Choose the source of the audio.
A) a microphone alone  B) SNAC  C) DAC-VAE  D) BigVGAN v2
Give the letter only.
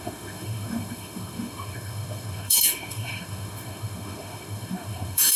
C